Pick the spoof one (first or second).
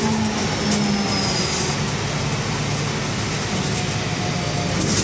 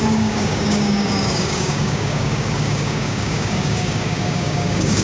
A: second